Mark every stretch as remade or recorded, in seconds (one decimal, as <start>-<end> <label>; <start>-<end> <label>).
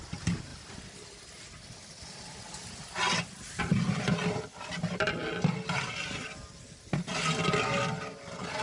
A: 0.0-8.6 recorded